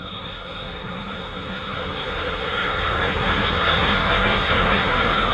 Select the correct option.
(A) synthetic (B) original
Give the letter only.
A